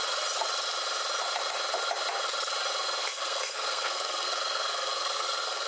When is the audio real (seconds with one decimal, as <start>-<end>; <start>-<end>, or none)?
0.0-3.0